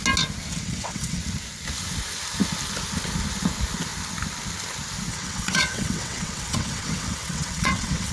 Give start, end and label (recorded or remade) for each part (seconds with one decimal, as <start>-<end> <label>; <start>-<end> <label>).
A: 0.0-0.5 recorded; 0.5-1.2 remade; 1.2-5.1 recorded; 5.1-8.1 remade